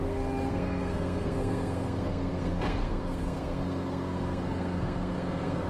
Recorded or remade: remade